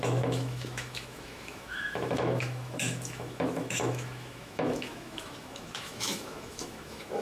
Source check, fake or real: fake